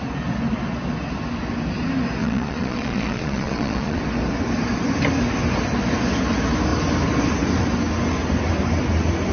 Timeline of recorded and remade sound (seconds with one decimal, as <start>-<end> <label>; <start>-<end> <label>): 0.0-2.2 recorded; 2.2-4.0 remade; 4.0-9.3 recorded